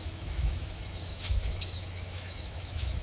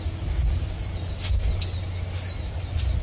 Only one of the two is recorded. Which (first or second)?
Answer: second